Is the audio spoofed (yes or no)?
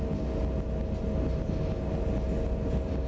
no